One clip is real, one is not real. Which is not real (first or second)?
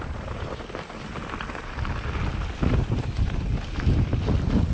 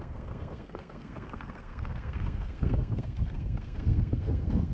second